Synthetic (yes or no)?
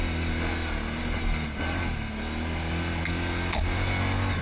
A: no